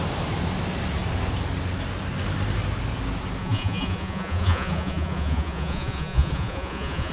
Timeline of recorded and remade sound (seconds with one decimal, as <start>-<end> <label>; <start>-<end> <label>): 0.0-3.4 recorded; 3.4-7.1 remade